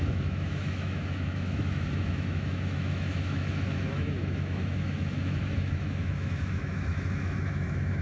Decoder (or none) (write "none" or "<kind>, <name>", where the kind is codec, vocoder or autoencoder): autoencoder, DAC-VAE